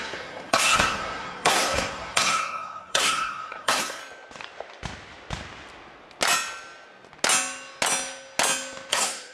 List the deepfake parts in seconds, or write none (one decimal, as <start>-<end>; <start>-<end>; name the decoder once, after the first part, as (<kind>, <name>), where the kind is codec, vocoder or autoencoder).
0.0-4.0 (codec, SNAC); 8.9-9.3